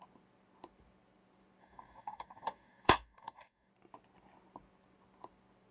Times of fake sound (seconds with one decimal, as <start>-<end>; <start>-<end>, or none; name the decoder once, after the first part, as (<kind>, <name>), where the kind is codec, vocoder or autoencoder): 1.6-3.7 (codec, DAC)